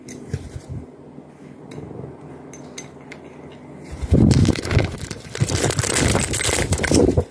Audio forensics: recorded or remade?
recorded